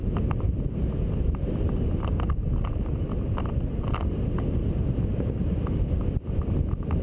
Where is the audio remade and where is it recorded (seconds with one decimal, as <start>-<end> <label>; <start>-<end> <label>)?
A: 0.0-7.0 recorded